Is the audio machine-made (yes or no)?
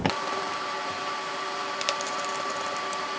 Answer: yes